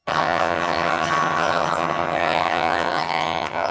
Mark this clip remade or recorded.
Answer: remade